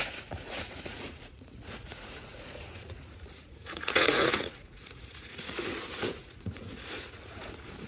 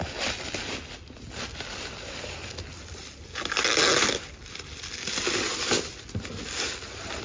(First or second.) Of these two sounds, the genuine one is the second